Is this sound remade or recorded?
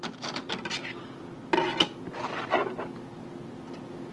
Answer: recorded